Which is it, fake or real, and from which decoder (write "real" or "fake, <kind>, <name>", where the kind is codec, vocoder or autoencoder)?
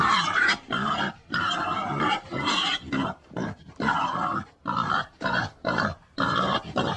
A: fake, vocoder, BigVGAN v2